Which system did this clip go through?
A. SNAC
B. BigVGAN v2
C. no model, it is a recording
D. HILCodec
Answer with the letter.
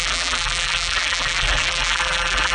B